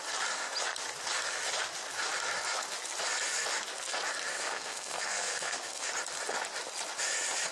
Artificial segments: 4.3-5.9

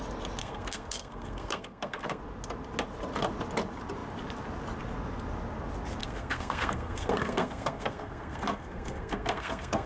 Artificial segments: 0.4-2.2; 6.0-9.9

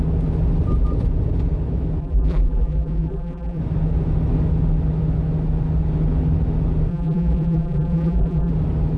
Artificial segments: 2.0-3.6; 6.9-8.5

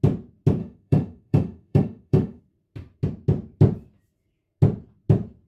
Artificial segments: 0.6-2.4

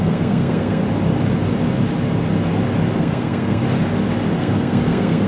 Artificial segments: 0.0-0.8; 3.0-3.6; 4.4-5.3